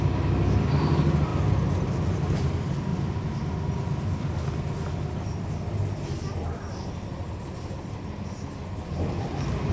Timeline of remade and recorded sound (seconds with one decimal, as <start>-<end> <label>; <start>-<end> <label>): 0.0-9.7 recorded

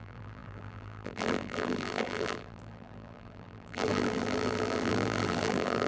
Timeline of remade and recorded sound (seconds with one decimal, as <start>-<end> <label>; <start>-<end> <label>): 0.0-5.9 remade

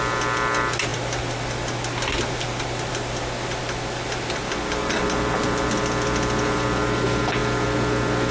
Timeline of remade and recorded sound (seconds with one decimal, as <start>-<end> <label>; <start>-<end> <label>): 0.0-8.3 recorded

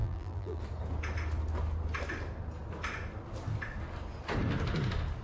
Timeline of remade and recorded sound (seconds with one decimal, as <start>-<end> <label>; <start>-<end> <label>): 0.0-0.6 remade; 0.6-5.2 recorded

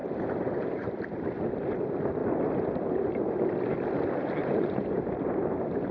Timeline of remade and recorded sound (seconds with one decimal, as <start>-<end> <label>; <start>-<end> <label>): 0.0-1.3 remade; 1.3-4.4 recorded; 4.4-5.2 remade; 5.2-5.9 recorded

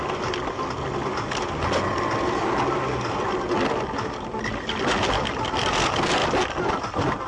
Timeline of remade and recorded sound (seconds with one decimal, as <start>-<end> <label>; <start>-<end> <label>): 0.0-7.3 recorded